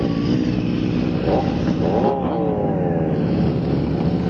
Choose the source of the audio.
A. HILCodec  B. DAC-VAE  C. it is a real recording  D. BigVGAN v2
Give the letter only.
C